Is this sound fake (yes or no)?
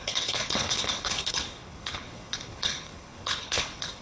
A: yes